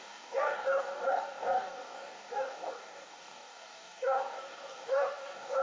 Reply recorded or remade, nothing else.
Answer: remade